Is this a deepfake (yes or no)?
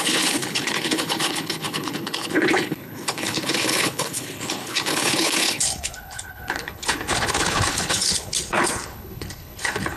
yes